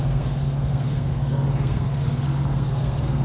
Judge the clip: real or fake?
fake